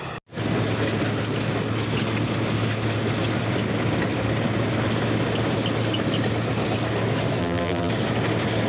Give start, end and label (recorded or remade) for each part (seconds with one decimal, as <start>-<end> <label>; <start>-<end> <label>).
0.0-7.4 recorded; 7.4-7.9 remade; 7.9-8.7 recorded